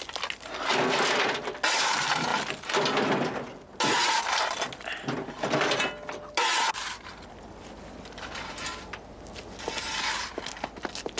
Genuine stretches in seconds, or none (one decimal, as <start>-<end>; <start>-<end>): 0.0-11.2